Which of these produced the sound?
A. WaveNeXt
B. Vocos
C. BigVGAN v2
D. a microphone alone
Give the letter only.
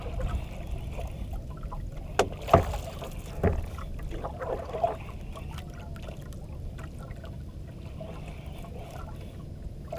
D